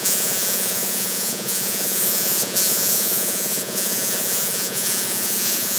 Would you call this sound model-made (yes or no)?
yes